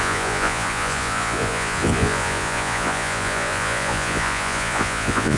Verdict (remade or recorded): remade